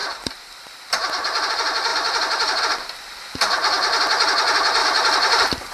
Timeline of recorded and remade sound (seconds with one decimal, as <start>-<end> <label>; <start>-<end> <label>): 0.0-1.5 remade; 1.5-1.9 recorded; 1.9-2.6 remade; 2.6-4.8 recorded; 4.8-5.7 remade